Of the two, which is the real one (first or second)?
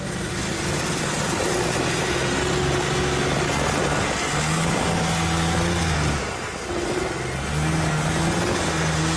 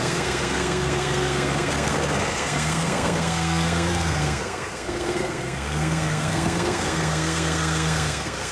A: first